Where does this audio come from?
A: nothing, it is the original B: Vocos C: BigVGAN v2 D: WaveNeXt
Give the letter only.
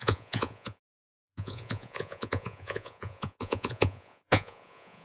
B